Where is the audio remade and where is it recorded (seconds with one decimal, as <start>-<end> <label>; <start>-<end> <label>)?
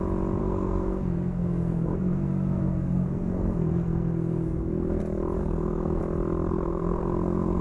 0.0-0.4 recorded; 0.4-5.0 remade; 5.0-5.4 recorded; 5.4-6.0 remade; 6.0-6.5 recorded; 6.5-7.6 remade